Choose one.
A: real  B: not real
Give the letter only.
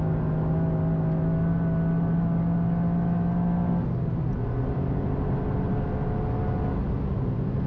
A